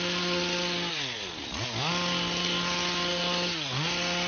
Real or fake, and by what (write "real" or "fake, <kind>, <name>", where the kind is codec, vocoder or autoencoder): real